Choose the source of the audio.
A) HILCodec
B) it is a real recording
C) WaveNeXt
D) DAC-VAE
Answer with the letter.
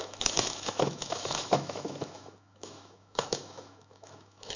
D